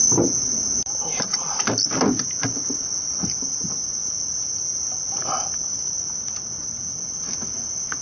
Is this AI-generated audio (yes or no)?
no